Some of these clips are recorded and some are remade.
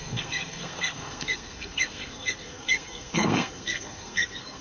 remade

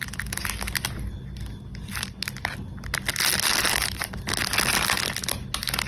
recorded